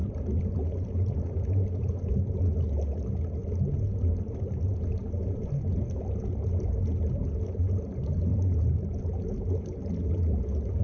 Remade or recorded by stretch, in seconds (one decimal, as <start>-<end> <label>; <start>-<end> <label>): 0.0-1.1 remade; 1.1-8.3 recorded; 8.3-8.8 remade; 8.8-10.8 recorded